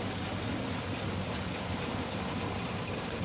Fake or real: real